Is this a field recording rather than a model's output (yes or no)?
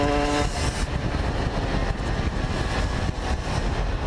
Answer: yes